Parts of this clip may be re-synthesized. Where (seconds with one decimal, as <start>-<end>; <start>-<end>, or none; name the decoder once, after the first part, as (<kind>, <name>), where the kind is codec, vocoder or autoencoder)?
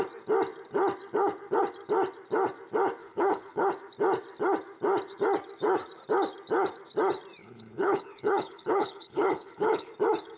3.0-3.7 (codec, HILCodec); 7.4-9.9